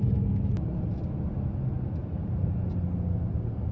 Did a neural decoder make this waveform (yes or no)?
no